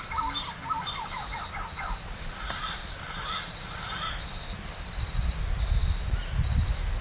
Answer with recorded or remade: recorded